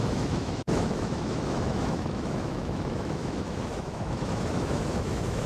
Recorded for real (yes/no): no